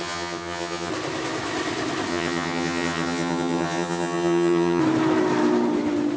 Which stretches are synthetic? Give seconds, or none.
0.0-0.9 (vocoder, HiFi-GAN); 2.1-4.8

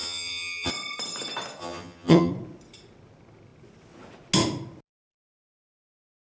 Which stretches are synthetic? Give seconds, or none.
0.0-0.7 (vocoder, HiFi-GAN); 1.6-2.3

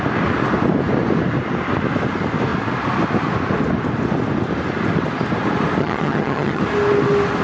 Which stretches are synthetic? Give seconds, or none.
5.8-6.6 (vocoder, HiFi-GAN)

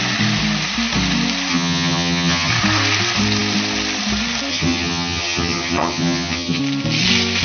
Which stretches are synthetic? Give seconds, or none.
1.5-2.5 (vocoder, HiFi-GAN); 4.5-6.6

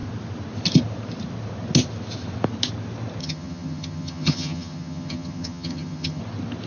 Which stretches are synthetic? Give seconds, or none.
3.2-6.2 (vocoder, HiFi-GAN)